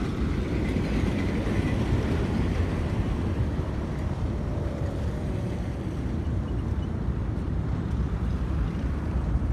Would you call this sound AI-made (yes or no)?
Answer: yes